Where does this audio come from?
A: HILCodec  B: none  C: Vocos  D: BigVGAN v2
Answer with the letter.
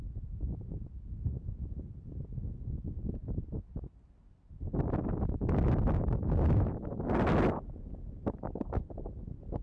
B